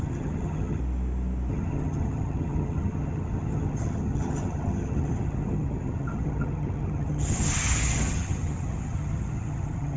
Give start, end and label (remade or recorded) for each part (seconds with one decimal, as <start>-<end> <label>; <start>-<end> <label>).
0.0-0.8 remade; 0.8-1.5 recorded; 1.5-10.0 remade